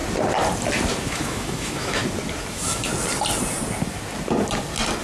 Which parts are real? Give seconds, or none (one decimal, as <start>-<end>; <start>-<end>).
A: 0.0-1.0; 2.0-2.5; 2.9-5.0

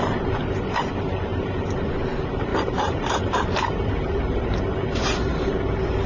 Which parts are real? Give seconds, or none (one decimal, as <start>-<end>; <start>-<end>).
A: 0.0-1.3; 1.9-2.5; 4.6-6.1